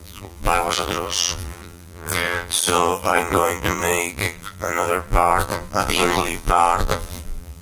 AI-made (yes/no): yes